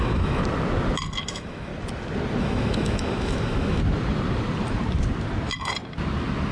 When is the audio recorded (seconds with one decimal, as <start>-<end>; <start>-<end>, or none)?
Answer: 0.4-1.2; 1.7-2.4; 3.8-6.5